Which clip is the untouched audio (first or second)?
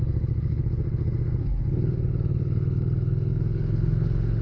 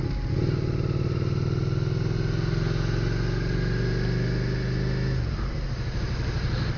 second